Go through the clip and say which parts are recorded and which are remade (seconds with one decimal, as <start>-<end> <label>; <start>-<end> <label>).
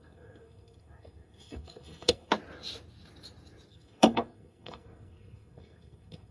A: 0.0-2.3 remade; 2.3-3.7 recorded; 3.7-6.3 remade